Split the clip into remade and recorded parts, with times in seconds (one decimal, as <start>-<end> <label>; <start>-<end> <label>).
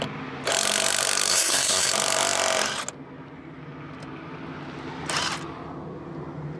0.0-1.3 recorded; 1.3-1.9 remade; 1.9-6.6 recorded